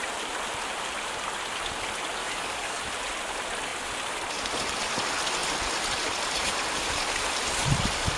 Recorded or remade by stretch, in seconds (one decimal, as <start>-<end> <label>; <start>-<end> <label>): 0.0-2.2 recorded; 2.2-2.8 remade; 2.8-8.2 recorded